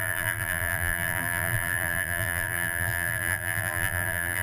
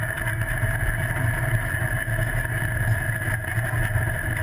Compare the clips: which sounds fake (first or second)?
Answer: first